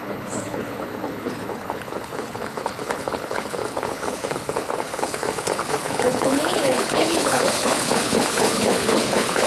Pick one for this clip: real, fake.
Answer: fake